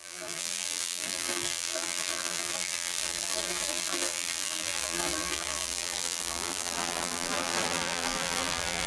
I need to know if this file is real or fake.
fake